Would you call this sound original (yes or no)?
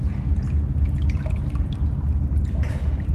no